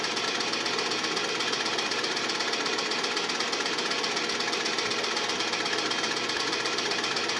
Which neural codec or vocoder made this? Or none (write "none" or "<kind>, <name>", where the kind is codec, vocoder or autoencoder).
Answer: none